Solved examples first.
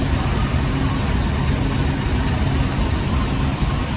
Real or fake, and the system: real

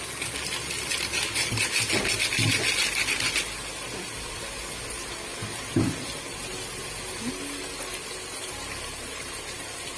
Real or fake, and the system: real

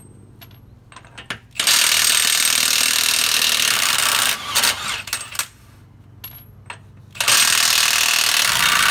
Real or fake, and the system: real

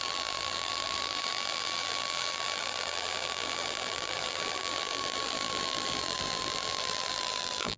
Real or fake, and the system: fake, vocoder, BigVGAN v2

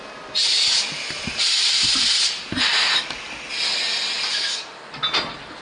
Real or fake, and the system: real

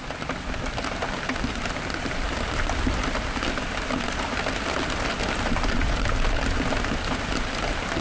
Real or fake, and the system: real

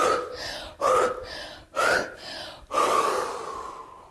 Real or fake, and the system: real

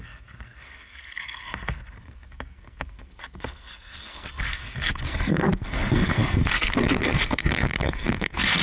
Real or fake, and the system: fake, codec, SNAC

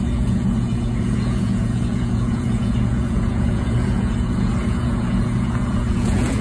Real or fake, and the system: fake, vocoder, Vocos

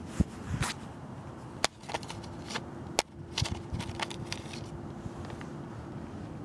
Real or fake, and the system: real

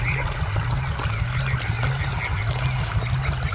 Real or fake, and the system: real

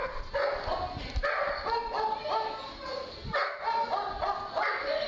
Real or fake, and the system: real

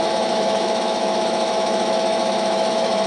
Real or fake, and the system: fake, autoencoder, DAC-VAE